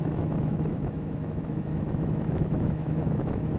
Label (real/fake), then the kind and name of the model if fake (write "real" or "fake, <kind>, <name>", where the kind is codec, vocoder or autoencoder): fake, autoencoder, DAC-VAE